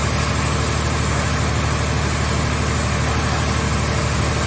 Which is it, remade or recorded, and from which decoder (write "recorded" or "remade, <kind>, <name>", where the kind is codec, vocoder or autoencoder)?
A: recorded